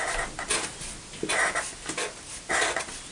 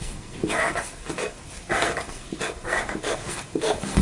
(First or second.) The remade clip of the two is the second